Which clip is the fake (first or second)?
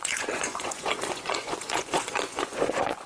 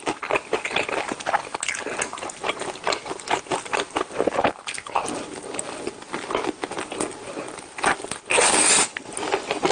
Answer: first